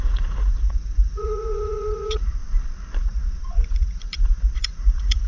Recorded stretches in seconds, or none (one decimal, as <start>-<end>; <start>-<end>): 2.4-3.0